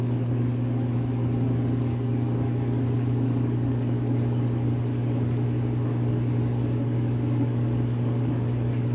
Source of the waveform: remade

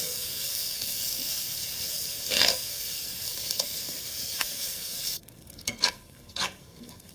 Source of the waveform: remade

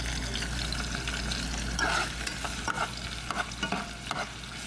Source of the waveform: recorded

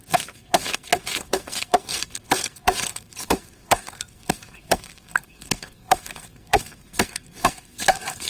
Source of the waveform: remade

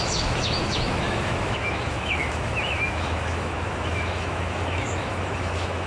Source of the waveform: remade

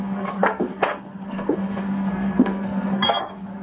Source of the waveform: remade